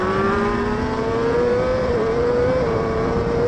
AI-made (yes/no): yes